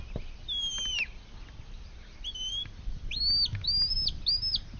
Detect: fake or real real